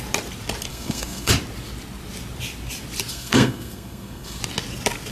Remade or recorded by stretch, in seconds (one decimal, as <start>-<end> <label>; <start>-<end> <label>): 0.0-0.7 recorded; 0.7-1.3 remade; 1.3-3.1 recorded; 3.1-4.4 remade; 4.4-5.1 recorded